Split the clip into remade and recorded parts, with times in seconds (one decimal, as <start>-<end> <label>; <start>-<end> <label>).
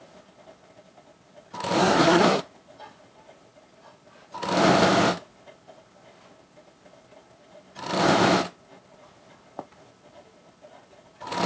0.0-1.8 recorded; 1.8-2.4 remade; 2.4-11.5 recorded